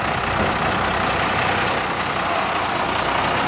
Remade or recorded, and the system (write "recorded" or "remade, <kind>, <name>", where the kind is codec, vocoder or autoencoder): recorded